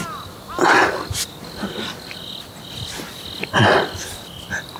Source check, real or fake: real